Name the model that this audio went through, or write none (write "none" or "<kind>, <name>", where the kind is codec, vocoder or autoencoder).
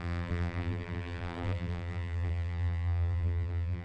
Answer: vocoder, BigVGAN v2